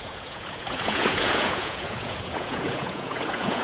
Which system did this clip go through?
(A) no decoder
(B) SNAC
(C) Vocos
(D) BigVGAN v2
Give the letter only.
C